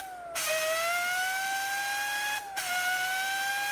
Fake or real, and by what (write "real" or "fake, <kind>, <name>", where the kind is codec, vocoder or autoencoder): real